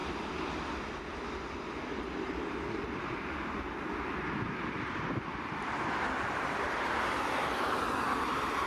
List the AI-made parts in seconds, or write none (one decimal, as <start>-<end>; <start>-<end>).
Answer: 4.7-8.7